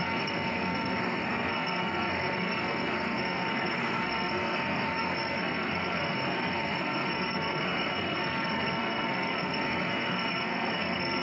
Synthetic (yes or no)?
yes